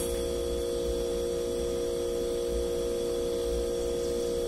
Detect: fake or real real